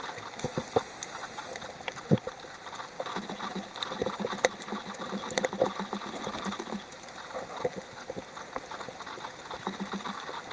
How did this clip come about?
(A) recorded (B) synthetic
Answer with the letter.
A